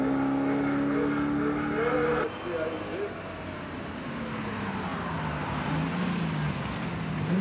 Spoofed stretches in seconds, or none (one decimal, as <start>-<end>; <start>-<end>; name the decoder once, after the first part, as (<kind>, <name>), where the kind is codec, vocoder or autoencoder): none